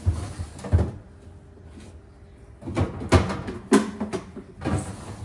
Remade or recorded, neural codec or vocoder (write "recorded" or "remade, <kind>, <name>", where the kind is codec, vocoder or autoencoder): recorded